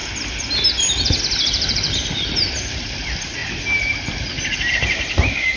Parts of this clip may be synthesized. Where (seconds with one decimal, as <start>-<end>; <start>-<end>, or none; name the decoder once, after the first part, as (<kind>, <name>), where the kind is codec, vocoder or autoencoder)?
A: 1.2-3.4 (vocoder, BigVGAN v2); 4.7-5.6